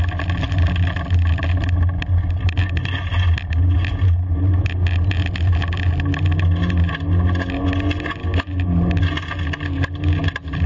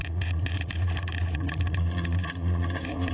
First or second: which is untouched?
first